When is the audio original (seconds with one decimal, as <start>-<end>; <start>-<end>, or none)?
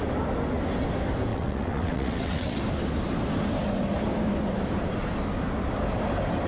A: 0.0-1.3; 2.6-6.5